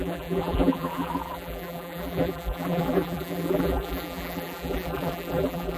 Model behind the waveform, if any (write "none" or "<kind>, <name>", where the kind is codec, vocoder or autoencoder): vocoder, BigVGAN v2